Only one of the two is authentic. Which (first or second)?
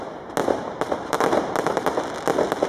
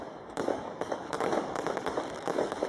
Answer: first